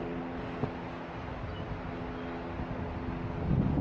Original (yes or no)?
yes